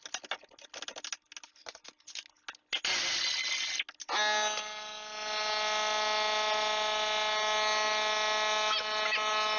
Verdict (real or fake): real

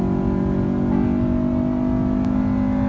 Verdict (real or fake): real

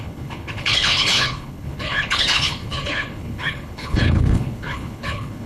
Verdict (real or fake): fake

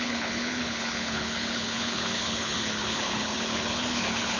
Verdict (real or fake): fake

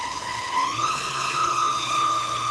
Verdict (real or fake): fake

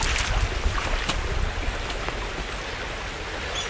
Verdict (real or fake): real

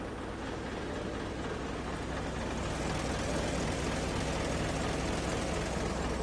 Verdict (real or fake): real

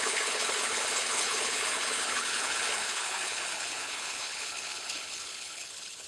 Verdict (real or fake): fake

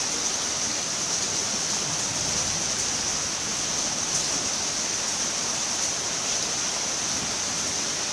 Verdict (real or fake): real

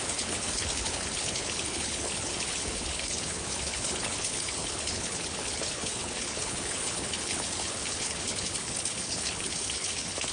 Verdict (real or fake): fake